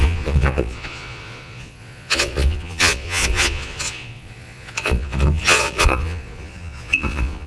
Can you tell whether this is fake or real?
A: fake